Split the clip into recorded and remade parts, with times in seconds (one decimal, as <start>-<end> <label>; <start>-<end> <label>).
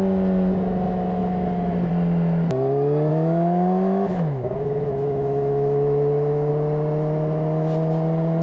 0.0-3.1 recorded; 3.1-6.5 remade; 6.5-8.4 recorded